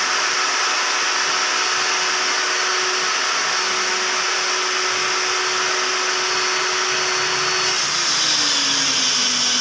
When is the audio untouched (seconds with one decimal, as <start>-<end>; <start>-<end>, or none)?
0.0-9.6